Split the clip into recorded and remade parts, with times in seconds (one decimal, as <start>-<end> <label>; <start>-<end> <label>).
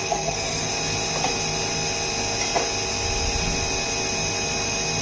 0.0-0.7 remade; 0.7-5.0 recorded